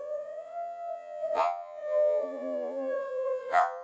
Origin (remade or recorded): remade